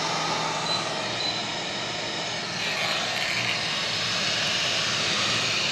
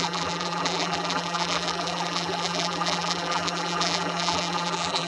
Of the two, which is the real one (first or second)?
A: first